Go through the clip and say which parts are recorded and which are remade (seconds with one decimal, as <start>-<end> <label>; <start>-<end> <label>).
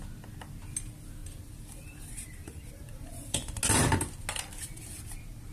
0.0-1.2 recorded; 1.2-3.6 remade; 3.6-5.5 recorded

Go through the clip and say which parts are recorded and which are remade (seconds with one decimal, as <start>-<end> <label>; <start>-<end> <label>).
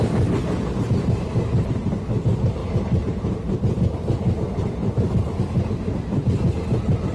0.0-7.1 recorded